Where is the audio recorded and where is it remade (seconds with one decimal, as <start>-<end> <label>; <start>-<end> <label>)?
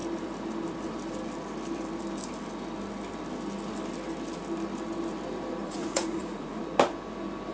0.0-5.6 recorded; 5.6-6.6 remade; 6.6-7.5 recorded